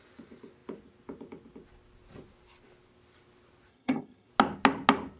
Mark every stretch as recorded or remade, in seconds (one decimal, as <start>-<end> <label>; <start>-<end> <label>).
0.0-3.7 recorded; 3.7-4.3 remade; 4.3-5.2 recorded